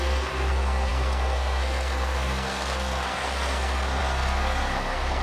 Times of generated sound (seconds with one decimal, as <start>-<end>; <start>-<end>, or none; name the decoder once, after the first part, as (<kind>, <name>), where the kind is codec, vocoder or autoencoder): 0.0-5.2 (codec, SNAC)